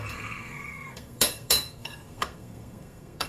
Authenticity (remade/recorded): remade